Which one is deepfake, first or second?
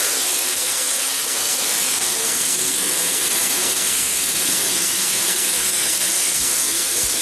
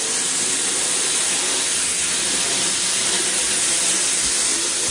first